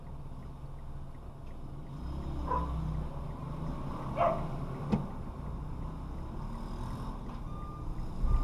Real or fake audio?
real